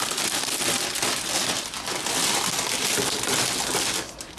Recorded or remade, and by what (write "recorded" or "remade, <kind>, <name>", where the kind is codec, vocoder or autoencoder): recorded